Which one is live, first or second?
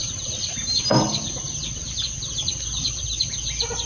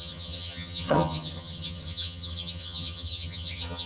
first